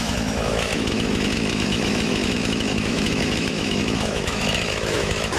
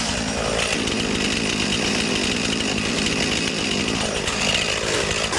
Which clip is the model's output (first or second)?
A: first